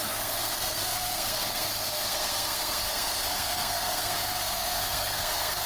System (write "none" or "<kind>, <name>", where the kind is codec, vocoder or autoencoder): codec, SNAC